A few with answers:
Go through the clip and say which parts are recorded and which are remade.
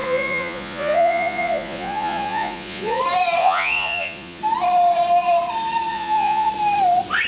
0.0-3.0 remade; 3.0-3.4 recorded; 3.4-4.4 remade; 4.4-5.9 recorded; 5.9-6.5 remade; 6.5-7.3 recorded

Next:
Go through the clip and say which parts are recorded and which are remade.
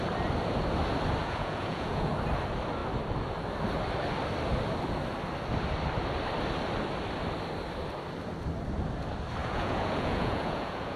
0.0-1.2 recorded; 1.2-2.1 remade; 2.1-9.4 recorded; 9.4-11.0 remade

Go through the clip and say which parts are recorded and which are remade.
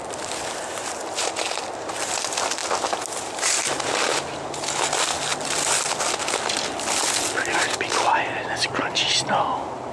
0.0-9.9 recorded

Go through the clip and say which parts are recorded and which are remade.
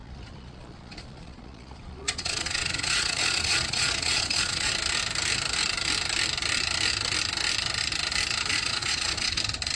0.0-4.7 remade; 4.7-8.5 recorded; 8.5-9.4 remade; 9.4-9.8 recorded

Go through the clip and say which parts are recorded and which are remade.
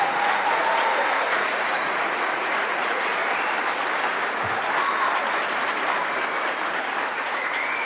0.0-3.2 remade; 3.2-7.0 recorded; 7.0-7.9 remade